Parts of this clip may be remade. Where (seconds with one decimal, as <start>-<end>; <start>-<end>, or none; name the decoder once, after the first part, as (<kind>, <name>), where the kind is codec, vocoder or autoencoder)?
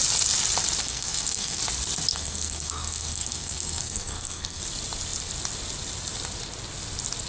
0.8-1.6 (codec, SNAC); 2.1-4.6